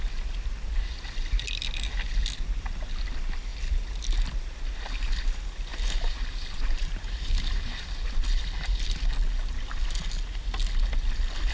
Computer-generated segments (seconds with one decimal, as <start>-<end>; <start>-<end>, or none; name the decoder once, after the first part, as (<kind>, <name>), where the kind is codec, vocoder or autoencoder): 5.7-8.1 (vocoder, BigVGAN v2)